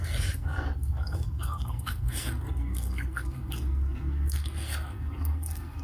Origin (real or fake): fake